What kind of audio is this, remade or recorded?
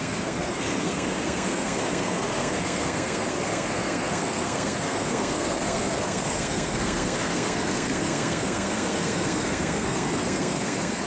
remade